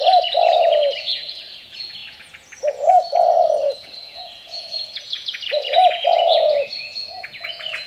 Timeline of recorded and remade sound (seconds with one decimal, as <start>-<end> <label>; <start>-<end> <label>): 0.0-7.9 remade